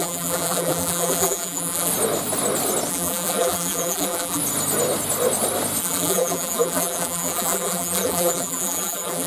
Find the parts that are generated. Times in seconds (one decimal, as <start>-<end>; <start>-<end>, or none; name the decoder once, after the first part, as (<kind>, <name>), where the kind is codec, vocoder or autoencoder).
0.0-1.9 (vocoder, BigVGAN v2); 2.9-4.4; 5.8-9.3